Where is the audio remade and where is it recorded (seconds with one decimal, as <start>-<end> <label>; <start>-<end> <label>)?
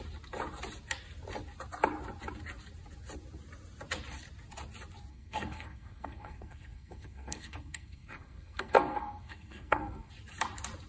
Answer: 0.0-5.1 recorded; 5.1-10.1 remade; 10.1-10.9 recorded